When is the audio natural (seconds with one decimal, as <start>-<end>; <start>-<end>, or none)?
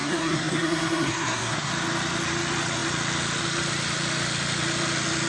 1.7-5.3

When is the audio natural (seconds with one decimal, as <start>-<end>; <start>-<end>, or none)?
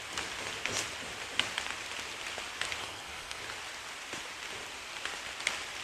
0.0-2.8; 3.4-5.8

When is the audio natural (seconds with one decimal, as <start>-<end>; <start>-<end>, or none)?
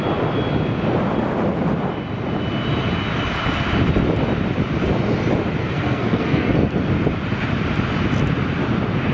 0.0-5.6; 6.9-9.1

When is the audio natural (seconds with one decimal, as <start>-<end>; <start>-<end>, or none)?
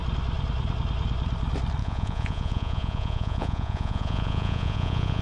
0.0-1.8